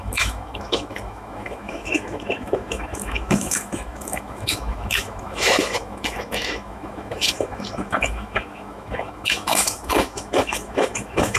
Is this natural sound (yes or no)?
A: no